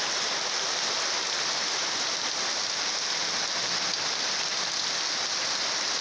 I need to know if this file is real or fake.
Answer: real